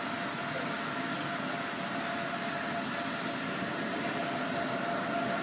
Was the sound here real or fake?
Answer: real